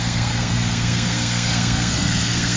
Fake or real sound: fake